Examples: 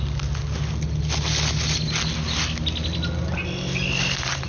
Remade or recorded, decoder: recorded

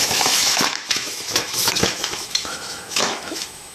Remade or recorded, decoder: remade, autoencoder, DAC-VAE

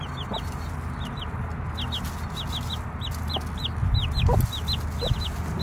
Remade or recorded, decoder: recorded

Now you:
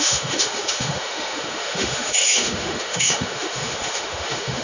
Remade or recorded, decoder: remade, autoencoder, DAC-VAE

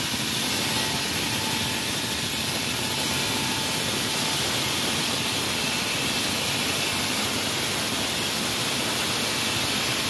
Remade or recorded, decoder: recorded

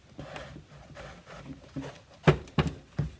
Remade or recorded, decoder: recorded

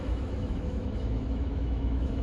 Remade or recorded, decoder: remade, autoencoder, DAC-VAE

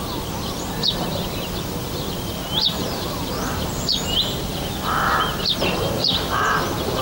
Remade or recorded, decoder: recorded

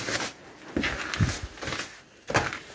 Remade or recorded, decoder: recorded